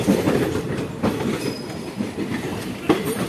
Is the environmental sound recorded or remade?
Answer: recorded